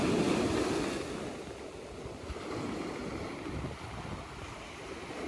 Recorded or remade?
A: recorded